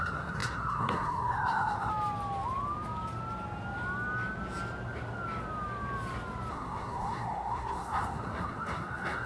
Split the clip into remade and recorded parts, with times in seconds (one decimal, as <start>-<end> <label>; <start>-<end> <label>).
0.0-1.9 remade; 1.9-6.5 recorded; 6.5-9.3 remade